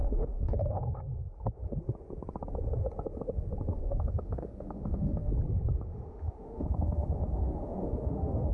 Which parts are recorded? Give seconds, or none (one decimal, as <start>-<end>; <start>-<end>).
1.0-3.7; 5.3-5.9